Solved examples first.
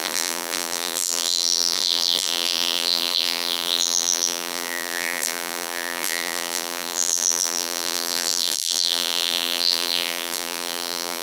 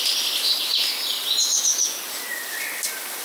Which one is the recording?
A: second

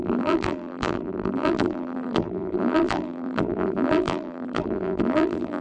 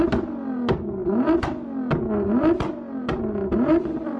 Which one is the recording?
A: second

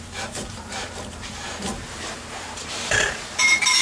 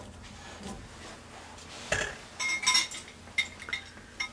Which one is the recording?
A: second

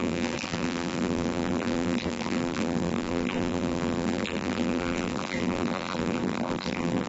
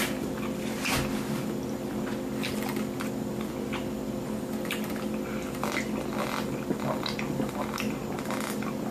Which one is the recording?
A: second